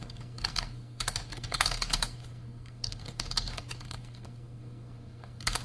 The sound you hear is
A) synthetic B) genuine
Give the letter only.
A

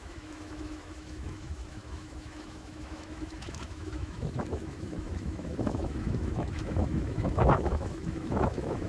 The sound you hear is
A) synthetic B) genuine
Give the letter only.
A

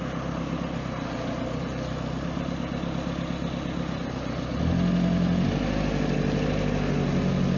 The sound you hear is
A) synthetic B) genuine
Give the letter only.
B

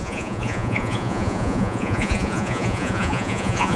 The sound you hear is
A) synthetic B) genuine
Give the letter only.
A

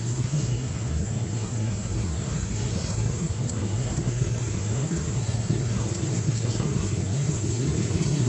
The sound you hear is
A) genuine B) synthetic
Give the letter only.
B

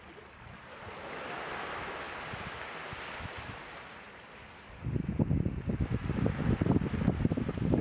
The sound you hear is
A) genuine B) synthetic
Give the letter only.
A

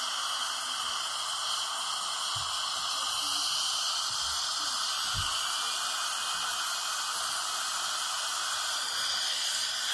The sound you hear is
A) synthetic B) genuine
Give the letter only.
B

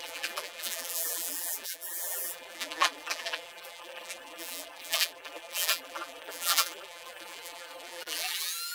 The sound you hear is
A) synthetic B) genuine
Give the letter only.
A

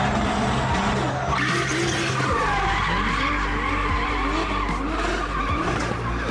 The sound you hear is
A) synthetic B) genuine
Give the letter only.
B